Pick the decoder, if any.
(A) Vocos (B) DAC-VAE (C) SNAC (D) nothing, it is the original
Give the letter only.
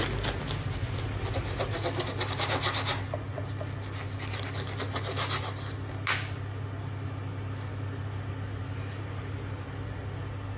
D